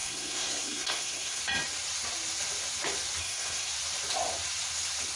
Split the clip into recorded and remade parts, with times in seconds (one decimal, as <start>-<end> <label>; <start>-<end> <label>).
0.0-1.4 remade; 1.4-3.2 recorded; 3.2-3.7 remade; 3.7-5.2 recorded